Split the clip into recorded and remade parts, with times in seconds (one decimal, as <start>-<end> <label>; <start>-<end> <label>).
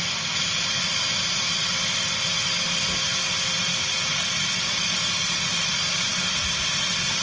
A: 0.0-7.2 recorded